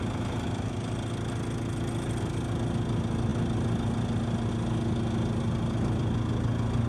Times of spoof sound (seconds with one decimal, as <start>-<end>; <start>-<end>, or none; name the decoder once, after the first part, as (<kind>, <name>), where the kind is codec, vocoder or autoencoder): none